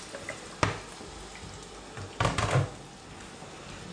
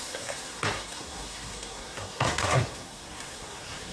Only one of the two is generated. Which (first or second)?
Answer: second